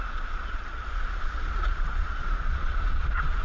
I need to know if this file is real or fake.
fake